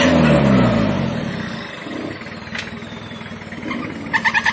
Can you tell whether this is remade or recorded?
recorded